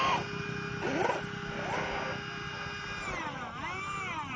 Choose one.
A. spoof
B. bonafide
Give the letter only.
B